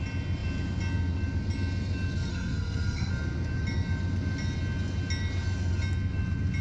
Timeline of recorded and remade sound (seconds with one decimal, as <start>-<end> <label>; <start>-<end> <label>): 0.0-2.3 recorded; 2.3-3.1 remade; 3.1-6.6 recorded